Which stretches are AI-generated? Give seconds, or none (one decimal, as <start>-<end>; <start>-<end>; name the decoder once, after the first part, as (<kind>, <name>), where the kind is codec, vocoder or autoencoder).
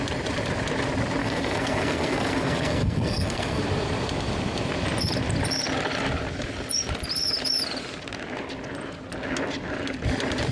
1.2-3.6 (codec, SNAC)